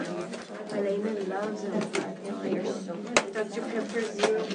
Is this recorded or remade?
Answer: recorded